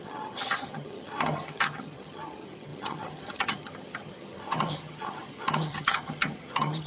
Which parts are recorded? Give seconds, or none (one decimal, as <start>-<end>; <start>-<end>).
none